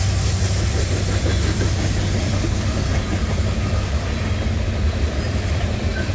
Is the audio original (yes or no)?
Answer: yes